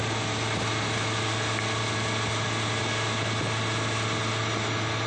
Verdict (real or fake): real